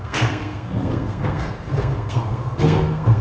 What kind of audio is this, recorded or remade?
remade